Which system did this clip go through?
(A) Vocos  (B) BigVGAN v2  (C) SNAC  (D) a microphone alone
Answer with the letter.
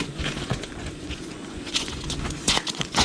A